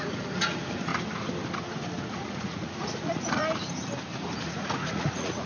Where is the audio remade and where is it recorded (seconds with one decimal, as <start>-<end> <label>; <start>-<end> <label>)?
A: 0.0-0.9 remade; 0.9-2.1 recorded; 2.1-3.4 remade; 3.4-4.4 recorded; 4.4-5.5 remade